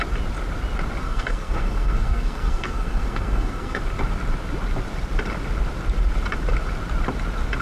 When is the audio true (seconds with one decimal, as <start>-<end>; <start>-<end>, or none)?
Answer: 0.0-1.0; 3.8-7.6